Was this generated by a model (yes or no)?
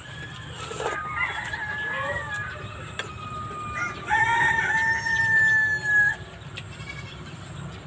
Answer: no